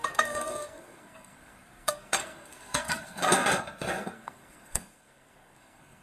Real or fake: fake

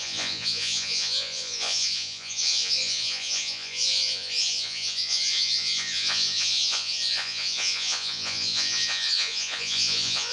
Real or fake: fake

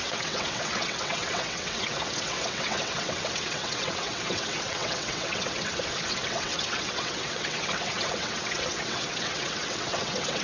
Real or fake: fake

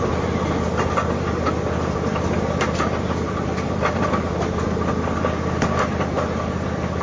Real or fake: real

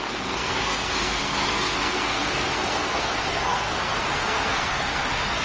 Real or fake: fake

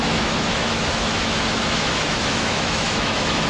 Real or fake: fake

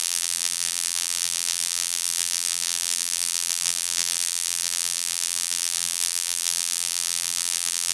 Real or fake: fake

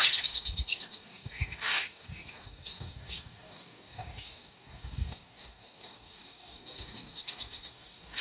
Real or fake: fake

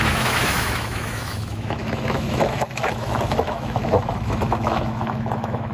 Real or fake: fake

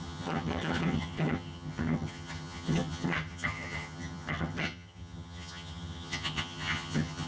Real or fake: fake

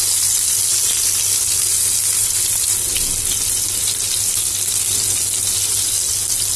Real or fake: real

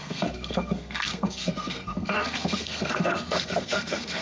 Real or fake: fake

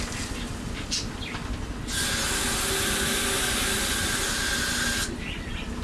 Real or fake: real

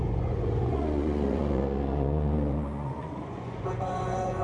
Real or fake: fake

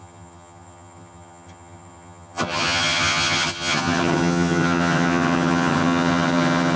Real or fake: fake